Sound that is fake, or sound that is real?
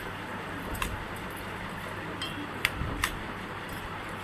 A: real